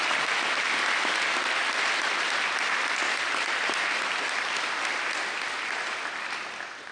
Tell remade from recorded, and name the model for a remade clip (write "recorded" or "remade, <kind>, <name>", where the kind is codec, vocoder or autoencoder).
recorded